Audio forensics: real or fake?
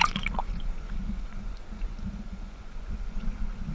fake